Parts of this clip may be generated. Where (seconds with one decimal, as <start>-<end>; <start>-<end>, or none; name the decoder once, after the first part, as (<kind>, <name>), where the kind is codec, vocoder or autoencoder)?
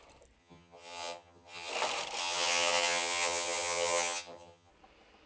0.4-1.7 (vocoder, HiFi-GAN); 2.2-4.7